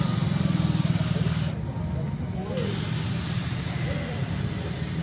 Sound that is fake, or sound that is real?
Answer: real